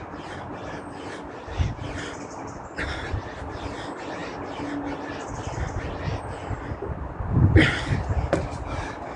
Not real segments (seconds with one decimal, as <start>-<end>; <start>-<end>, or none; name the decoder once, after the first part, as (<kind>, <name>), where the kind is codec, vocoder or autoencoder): 4.2-4.7 (vocoder, BigVGAN v2)